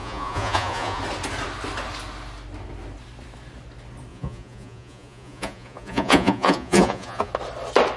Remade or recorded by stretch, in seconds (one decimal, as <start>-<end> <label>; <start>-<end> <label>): 0.0-1.0 remade; 1.0-4.1 recorded; 4.1-7.3 remade; 7.3-8.0 recorded